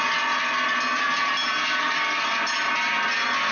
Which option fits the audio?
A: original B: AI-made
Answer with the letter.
A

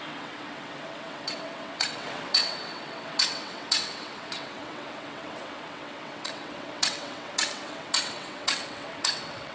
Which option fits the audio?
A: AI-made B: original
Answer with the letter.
A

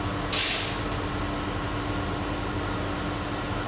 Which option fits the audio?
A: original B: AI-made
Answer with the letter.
A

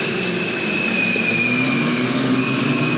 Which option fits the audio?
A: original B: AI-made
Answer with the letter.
A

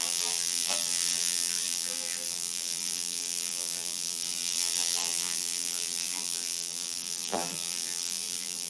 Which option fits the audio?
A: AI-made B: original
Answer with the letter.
A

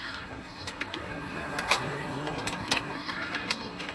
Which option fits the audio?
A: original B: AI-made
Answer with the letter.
B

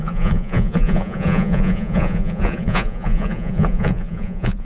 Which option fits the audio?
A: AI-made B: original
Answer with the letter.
A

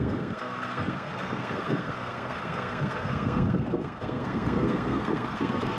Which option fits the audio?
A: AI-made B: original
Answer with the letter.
A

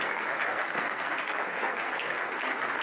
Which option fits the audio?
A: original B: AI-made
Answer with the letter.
B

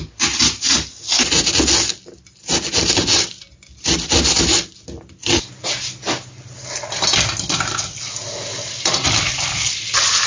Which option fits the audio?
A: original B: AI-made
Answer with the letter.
A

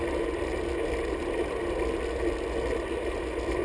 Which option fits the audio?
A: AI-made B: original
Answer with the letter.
B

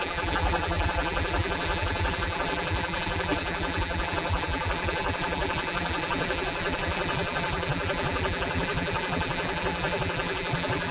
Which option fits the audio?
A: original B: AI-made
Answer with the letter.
B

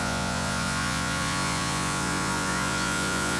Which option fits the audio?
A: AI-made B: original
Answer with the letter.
A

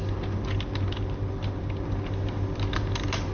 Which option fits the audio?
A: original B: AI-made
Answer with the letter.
A